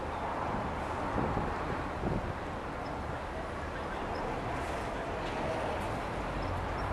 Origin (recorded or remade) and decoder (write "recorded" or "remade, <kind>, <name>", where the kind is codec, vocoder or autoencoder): recorded